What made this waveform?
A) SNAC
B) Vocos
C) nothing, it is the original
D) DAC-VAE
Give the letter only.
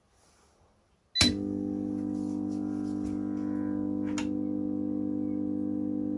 C